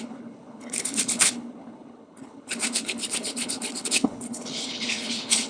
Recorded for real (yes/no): no